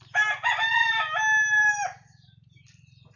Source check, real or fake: real